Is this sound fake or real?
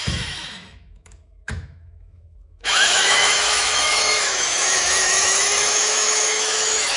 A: fake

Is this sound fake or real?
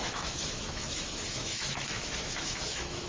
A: fake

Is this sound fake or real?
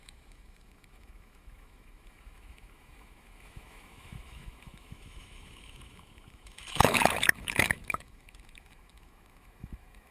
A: fake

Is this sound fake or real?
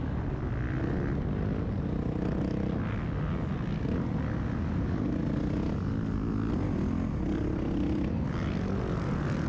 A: real